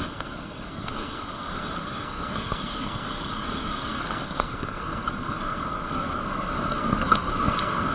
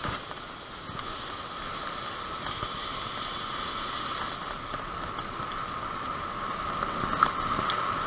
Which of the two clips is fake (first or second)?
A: first